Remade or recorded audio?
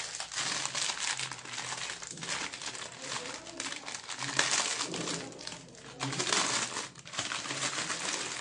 recorded